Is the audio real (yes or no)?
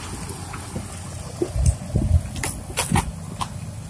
yes